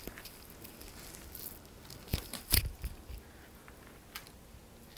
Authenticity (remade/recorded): recorded